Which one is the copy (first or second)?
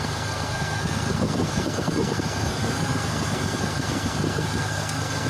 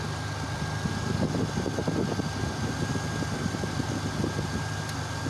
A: first